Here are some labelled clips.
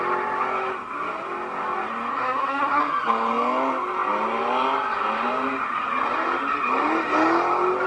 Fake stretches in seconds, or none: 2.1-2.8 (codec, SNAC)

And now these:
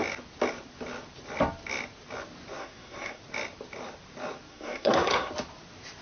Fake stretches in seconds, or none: 2.6-3.2 (codec, SNAC); 4.5-5.3

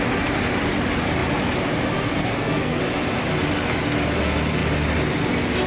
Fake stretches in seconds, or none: 2.2-2.8 (codec, SNAC)

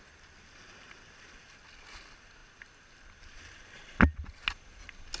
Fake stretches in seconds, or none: none